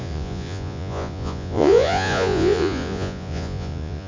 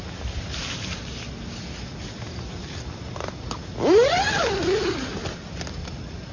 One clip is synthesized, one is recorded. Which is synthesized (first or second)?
first